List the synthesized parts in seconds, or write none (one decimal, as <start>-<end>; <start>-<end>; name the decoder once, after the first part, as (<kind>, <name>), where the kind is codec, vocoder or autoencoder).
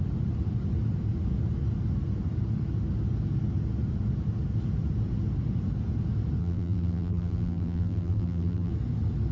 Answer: 6.4-8.7 (vocoder, BigVGAN v2)